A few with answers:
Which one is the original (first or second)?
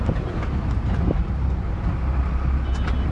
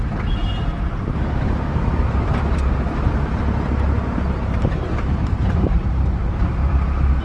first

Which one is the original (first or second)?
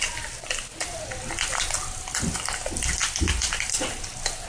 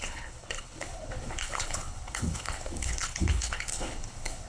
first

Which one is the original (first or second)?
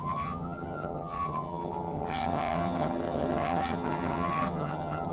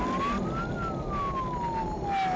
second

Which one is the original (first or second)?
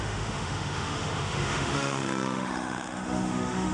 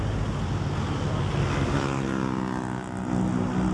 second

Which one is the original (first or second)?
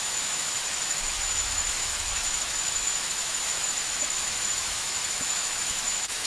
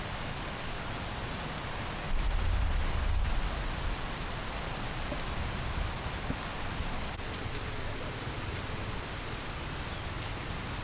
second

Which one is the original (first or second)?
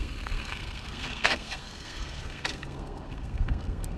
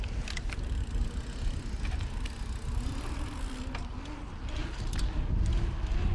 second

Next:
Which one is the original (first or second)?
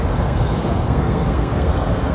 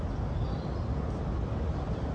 second